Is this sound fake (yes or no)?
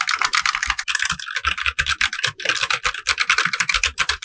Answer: no